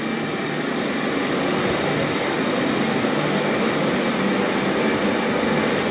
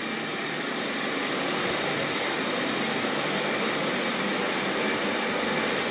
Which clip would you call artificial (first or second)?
second